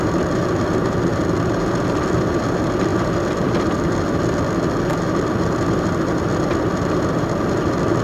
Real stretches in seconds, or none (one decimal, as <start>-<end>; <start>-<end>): 0.0-8.0